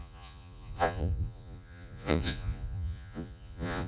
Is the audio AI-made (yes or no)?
yes